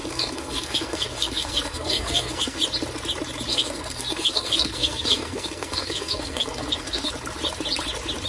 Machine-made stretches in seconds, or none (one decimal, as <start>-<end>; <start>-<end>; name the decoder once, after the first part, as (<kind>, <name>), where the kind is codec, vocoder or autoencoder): 0.0-2.6 (codec, SNAC); 3.5-7.1